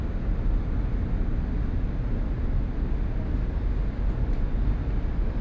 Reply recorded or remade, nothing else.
recorded